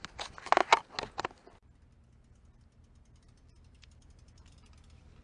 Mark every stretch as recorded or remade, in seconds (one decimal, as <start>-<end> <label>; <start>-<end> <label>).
0.0-5.2 recorded